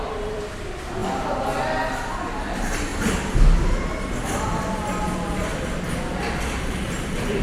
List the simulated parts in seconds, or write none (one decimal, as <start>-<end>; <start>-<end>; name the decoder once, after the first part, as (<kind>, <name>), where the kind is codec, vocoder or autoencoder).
0.0-1.0 (vocoder, BigVGAN v2); 2.5-2.9; 6.8-7.4